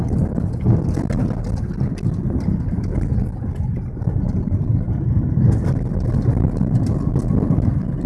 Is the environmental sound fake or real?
real